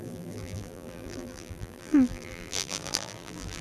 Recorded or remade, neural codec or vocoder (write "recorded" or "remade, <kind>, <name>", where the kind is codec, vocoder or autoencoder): remade, vocoder, BigVGAN v2